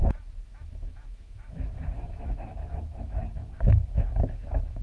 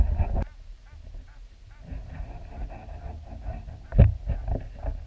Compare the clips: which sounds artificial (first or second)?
first